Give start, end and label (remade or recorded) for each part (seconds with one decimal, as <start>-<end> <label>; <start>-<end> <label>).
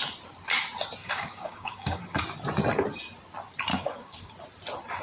0.0-1.0 recorded; 1.0-2.2 remade; 2.2-3.7 recorded; 3.7-4.3 remade; 4.3-5.0 recorded